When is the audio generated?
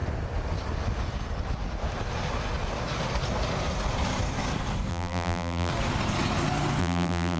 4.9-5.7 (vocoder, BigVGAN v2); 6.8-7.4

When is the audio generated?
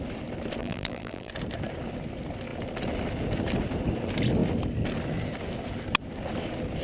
0.6-1.3 (vocoder, BigVGAN v2)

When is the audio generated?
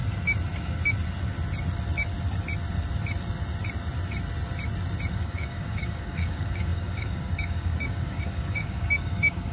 5.1-9.5 (codec, DAC)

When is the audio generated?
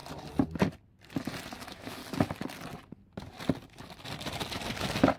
1.6-2.0 (autoencoder, DAC-VAE)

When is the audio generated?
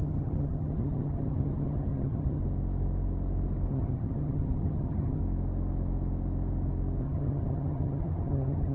0.0-2.4 (vocoder, HiFi-GAN); 3.7-5.2; 7.0-8.7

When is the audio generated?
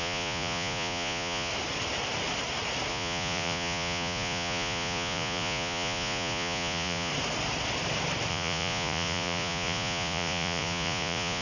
0.0-1.5 (vocoder, Vocos); 2.9-7.1; 8.3-11.4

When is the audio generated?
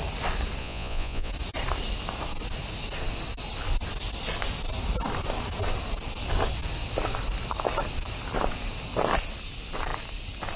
0.6-1.3 (vocoder, Vocos)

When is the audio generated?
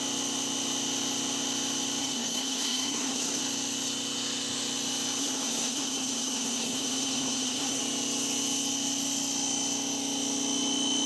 2.0-3.4 (codec, SNAC); 5.2-7.8